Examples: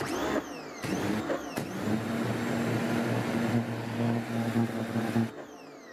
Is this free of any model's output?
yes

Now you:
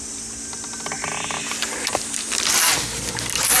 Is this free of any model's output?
yes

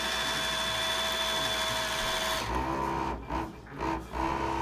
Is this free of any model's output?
yes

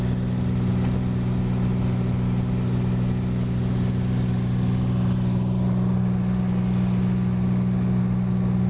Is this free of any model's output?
yes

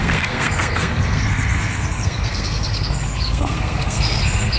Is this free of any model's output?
no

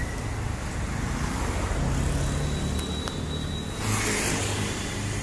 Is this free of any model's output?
yes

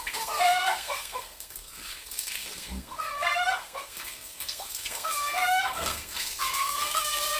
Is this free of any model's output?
no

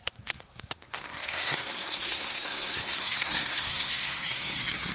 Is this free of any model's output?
no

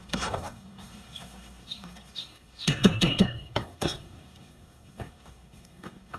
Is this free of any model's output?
no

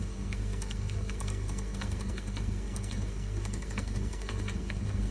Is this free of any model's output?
no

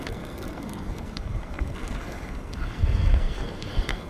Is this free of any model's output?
no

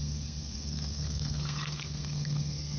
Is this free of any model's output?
no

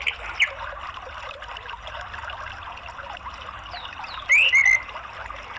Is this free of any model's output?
yes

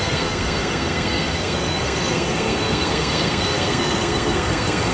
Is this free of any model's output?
no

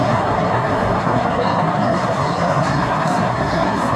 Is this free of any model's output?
no